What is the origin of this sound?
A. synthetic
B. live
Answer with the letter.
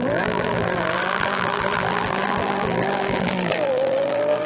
A